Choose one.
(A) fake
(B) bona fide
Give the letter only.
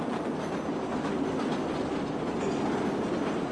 B